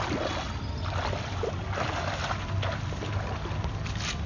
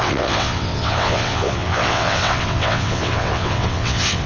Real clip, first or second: first